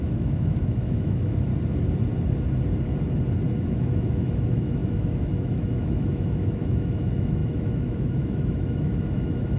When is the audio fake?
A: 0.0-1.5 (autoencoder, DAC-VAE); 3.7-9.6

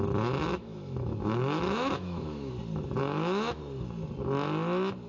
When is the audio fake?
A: 0.5-2.5 (autoencoder, DAC-VAE); 3.0-3.6

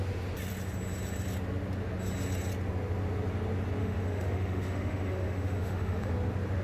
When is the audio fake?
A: 3.8-6.1 (autoencoder, DAC-VAE)

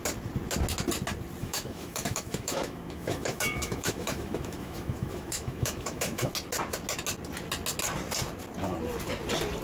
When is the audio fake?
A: 1.4-6.3 (autoencoder, DAC-VAE)

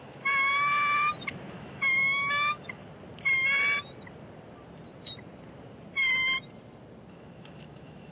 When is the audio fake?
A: 0.0-0.7 (autoencoder, DAC-VAE); 1.5-2.8; 7.1-8.1

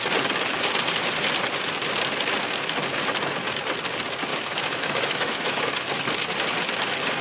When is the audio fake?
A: 4.3-6.0 (autoencoder, DAC-VAE)

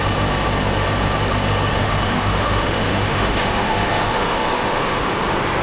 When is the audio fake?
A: 1.7-5.1 (autoencoder, DAC-VAE)